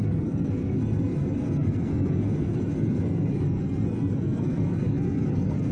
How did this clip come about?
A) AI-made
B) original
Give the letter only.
A